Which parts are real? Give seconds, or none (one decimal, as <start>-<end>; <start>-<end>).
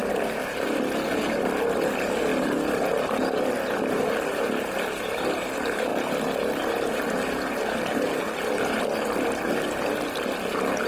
0.0-10.9